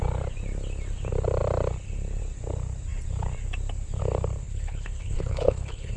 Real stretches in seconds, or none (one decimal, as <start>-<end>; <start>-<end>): 0.0-4.4